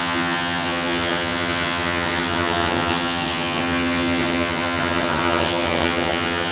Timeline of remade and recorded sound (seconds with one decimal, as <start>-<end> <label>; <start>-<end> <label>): 0.0-6.5 remade